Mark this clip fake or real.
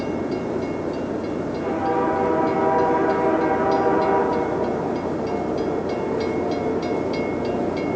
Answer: real